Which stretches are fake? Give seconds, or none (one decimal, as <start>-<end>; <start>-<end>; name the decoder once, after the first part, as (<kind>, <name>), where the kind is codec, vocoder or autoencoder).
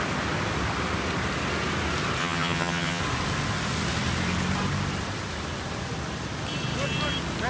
2.2-3.0 (vocoder, HiFi-GAN)